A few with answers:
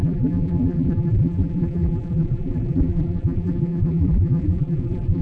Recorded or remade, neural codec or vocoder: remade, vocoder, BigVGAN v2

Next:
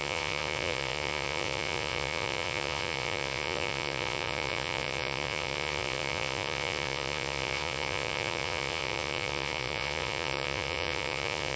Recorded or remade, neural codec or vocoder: remade, vocoder, Vocos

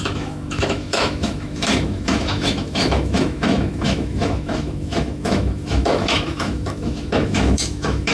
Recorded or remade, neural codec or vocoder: remade, autoencoder, DAC-VAE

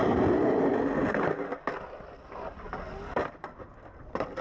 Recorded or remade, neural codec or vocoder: recorded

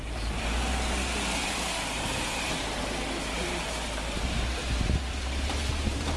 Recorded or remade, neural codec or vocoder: remade, vocoder, BigVGAN v2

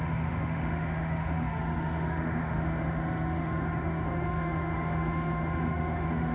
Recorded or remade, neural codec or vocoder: remade, autoencoder, DAC-VAE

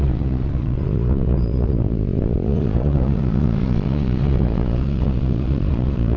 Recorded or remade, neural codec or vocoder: remade, vocoder, Vocos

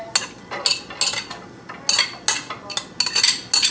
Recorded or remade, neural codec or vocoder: recorded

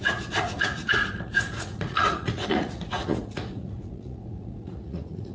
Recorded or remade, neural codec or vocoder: remade, vocoder, Vocos